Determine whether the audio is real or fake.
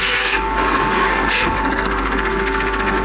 fake